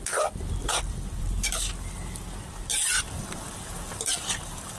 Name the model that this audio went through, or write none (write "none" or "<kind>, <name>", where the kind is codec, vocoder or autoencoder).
none